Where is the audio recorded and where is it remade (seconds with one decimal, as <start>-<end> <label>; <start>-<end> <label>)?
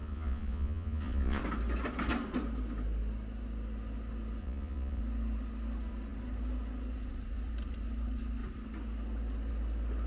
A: 0.0-1.4 remade; 1.4-4.4 recorded; 4.4-5.0 remade; 5.0-10.1 recorded